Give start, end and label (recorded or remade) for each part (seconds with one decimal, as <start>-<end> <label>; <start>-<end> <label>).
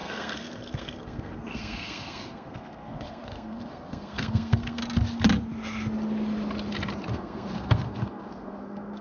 0.0-4.8 remade; 4.8-7.1 recorded; 7.1-9.0 remade